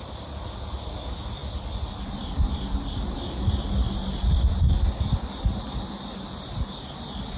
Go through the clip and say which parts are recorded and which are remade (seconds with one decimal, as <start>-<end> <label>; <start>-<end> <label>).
0.0-7.4 recorded